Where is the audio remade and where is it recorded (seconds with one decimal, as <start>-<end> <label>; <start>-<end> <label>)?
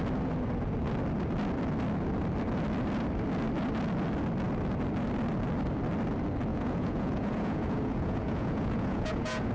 0.0-6.5 recorded; 6.5-9.5 remade